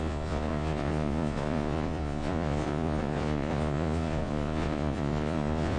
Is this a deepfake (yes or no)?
yes